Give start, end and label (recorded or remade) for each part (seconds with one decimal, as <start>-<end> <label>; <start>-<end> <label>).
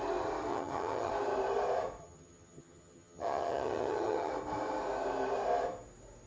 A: 0.0-0.5 recorded; 0.5-1.1 remade; 1.1-2.0 recorded; 2.0-4.3 remade; 4.3-6.3 recorded